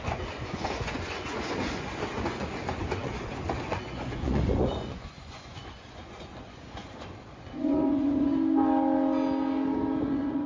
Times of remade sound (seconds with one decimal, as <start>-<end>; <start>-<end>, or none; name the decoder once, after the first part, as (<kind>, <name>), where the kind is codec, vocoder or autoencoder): 0.0-8.3 (vocoder, Vocos); 10.0-10.5